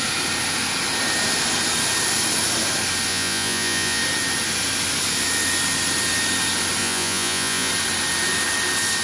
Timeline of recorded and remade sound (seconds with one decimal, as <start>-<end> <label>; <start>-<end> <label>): 0.0-3.1 recorded; 3.1-4.0 remade; 4.0-6.8 recorded; 6.8-7.7 remade; 7.7-9.0 recorded

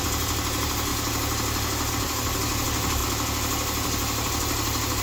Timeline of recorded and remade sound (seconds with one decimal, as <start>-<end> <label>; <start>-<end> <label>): 0.0-5.0 recorded